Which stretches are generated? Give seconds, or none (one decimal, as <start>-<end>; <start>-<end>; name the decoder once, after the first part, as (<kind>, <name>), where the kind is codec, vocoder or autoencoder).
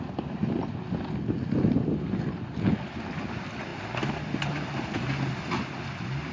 none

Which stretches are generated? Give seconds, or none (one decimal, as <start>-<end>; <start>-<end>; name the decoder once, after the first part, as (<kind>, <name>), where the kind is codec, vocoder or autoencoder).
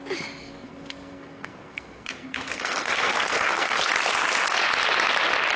0.4-3.8 (codec, SNAC)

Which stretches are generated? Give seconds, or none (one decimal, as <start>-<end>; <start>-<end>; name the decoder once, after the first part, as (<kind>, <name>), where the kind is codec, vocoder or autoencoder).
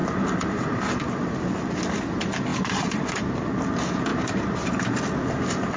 0.0-1.1 (vocoder, BigVGAN v2); 2.5-3.5; 4.1-5.0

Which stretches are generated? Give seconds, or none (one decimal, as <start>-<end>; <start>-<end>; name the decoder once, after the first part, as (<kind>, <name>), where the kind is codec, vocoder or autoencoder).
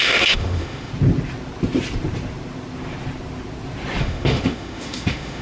0.0-0.9 (autoencoder, DAC-VAE); 4.0-5.4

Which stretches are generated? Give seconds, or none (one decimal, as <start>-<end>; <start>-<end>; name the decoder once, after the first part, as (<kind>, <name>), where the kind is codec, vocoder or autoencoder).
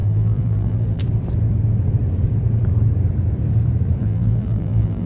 0.0-1.0 (vocoder, BigVGAN v2); 4.0-5.1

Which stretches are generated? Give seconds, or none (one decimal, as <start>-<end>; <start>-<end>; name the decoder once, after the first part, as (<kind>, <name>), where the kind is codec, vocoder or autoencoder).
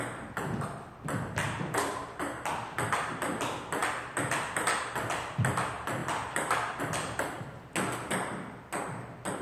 1.4-2.2 (vocoder, BigVGAN v2); 6.0-6.8